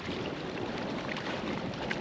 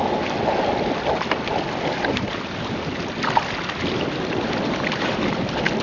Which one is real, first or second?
second